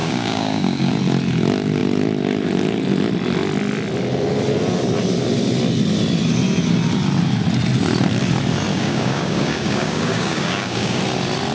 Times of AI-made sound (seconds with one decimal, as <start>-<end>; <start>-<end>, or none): 0.0-0.9; 8.7-11.0